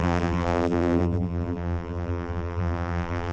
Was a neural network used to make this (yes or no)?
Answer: yes